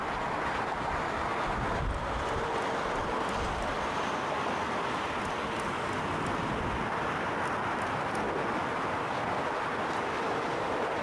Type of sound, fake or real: fake